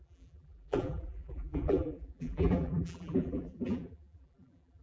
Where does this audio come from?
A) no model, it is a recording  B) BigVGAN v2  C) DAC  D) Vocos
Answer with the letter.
B